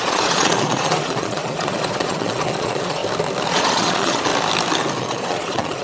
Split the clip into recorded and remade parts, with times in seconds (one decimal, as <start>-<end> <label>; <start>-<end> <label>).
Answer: 0.0-3.0 remade; 3.0-3.5 recorded; 3.5-4.3 remade; 4.3-5.0 recorded; 5.0-5.8 remade